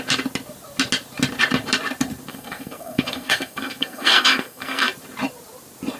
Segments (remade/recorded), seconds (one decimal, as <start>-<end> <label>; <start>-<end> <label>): 0.0-2.3 recorded; 2.3-4.9 remade; 4.9-6.0 recorded